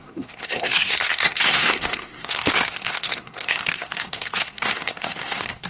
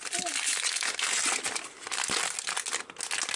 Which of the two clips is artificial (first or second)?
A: first